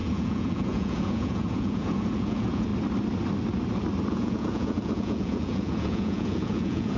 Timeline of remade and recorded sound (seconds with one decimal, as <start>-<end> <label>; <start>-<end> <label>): 0.0-2.7 remade; 2.7-4.1 recorded; 4.1-7.0 remade